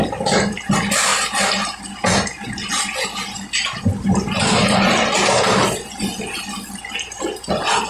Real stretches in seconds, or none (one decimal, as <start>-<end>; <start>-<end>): 0.0-1.1; 2.7-3.1; 3.8-7.9